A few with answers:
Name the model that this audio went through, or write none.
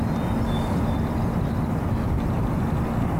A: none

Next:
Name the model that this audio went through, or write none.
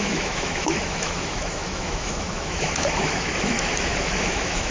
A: autoencoder, DAC-VAE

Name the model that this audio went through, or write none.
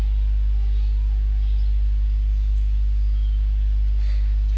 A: none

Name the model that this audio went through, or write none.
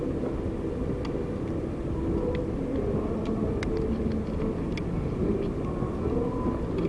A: none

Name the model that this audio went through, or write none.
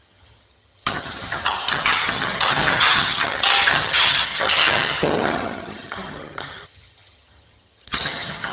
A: vocoder, HiFi-GAN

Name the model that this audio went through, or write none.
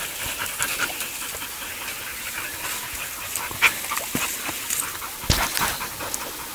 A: none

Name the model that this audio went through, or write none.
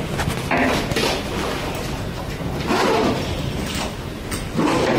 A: none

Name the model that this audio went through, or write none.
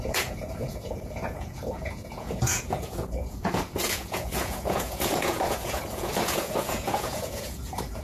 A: vocoder, Vocos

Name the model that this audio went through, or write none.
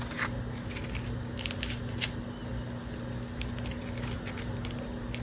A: none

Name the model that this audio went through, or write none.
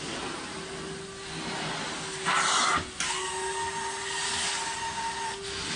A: none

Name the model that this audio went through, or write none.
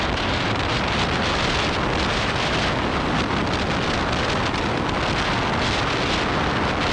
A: none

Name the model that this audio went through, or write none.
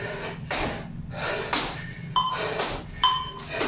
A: none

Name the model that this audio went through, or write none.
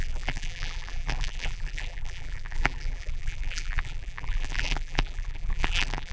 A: vocoder, BigVGAN v2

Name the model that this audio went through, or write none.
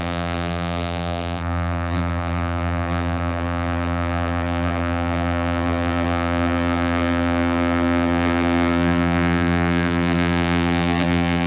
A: vocoder, BigVGAN v2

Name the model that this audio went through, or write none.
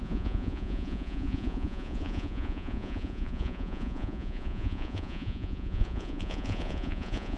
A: vocoder, Vocos